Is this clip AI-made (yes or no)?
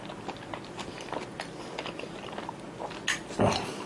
no